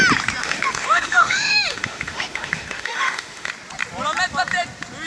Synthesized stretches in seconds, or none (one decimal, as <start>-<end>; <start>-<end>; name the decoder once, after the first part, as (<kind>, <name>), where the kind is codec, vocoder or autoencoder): 0.4-3.5 (autoencoder, DAC-VAE)